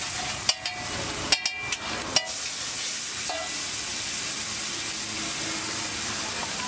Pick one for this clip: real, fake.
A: real